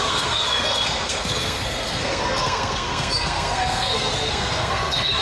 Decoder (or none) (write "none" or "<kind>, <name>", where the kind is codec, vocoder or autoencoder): codec, SNAC